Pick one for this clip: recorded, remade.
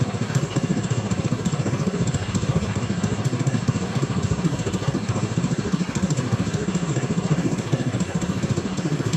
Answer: remade